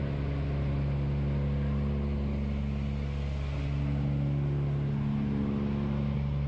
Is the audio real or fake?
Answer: real